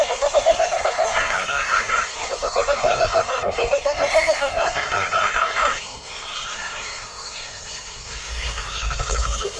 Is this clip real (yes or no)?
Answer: no